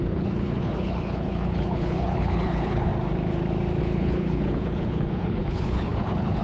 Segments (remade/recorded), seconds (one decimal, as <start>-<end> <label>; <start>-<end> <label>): 0.0-2.9 remade; 2.9-3.8 recorded; 3.8-6.4 remade